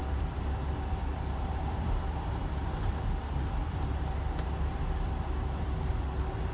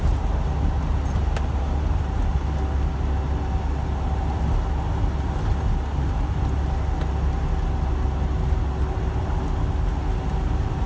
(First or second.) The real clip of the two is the second